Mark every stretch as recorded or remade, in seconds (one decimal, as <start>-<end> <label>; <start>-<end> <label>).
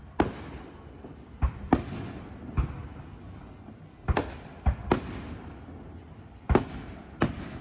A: 0.0-7.6 recorded